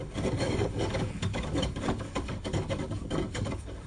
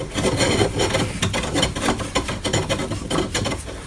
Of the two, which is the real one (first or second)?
second